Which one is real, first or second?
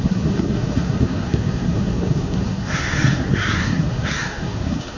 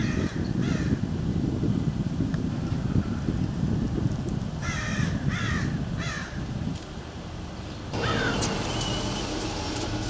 second